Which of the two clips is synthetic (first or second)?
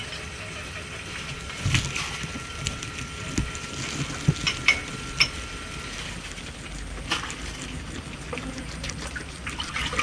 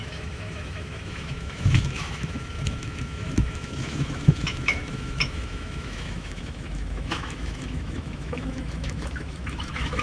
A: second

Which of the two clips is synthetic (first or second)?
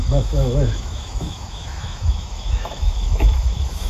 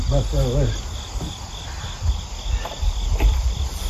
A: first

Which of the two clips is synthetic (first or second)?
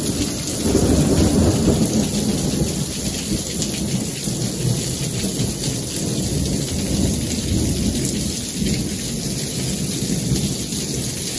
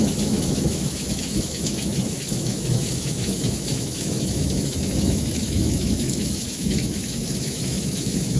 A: second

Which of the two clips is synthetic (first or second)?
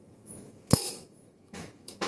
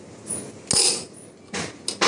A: first